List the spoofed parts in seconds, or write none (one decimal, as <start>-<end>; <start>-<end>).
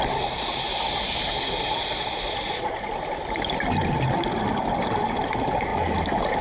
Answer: none